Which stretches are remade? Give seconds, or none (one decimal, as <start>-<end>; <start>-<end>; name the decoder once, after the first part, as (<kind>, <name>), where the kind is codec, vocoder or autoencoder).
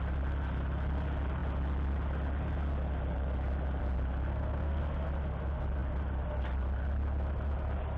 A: 4.3-4.8 (codec, SNAC)